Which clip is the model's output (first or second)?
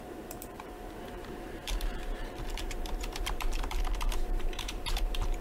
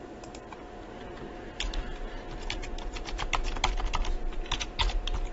first